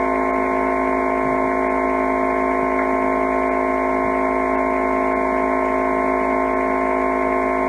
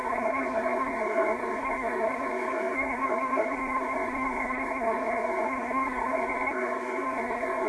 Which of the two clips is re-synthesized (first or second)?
second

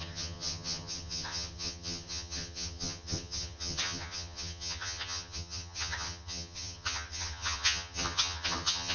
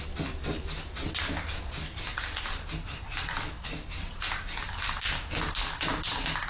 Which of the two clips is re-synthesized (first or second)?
first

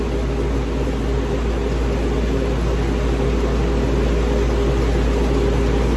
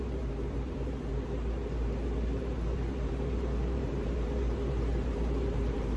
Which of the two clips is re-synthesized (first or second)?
second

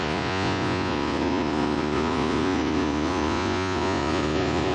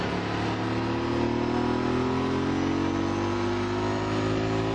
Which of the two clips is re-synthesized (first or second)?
first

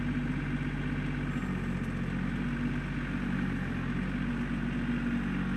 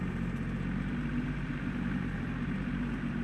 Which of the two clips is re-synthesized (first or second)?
second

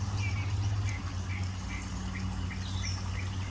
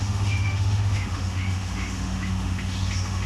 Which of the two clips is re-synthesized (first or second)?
second